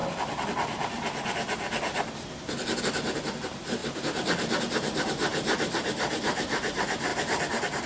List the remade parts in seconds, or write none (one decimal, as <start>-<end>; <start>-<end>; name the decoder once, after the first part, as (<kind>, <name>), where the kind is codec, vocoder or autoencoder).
2.8-7.9 (vocoder, BigVGAN v2)